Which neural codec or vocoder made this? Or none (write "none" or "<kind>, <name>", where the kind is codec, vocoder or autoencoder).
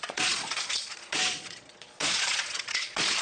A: vocoder, Vocos